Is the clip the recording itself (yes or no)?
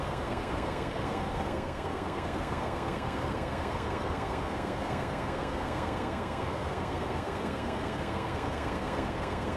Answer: no